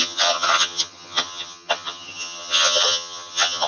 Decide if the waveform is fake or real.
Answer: fake